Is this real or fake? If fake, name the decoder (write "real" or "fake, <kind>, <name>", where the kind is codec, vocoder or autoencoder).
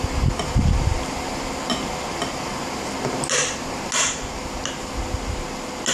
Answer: real